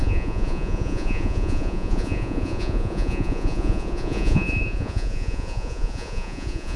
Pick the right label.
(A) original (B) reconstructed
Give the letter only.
B